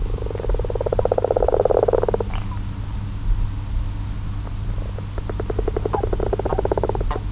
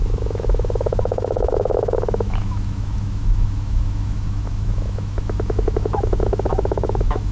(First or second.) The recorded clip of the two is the first